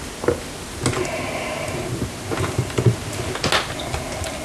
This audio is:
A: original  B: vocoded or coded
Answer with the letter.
A